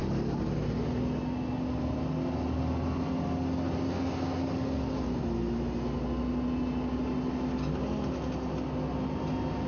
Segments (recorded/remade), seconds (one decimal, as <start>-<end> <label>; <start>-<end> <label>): 0.0-9.7 recorded